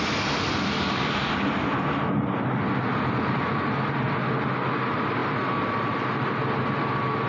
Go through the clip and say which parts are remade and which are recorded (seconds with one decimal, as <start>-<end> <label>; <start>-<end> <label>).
0.0-7.3 recorded